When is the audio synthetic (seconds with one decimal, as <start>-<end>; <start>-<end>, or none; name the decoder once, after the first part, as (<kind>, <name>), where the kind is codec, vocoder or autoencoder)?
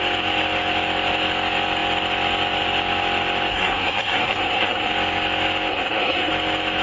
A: 3.5-4.9 (codec, SNAC); 5.7-6.3